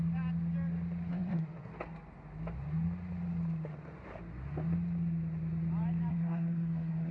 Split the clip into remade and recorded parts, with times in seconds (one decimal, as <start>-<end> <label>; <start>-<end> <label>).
0.0-1.1 recorded; 1.1-1.7 remade; 1.7-6.1 recorded; 6.1-7.1 remade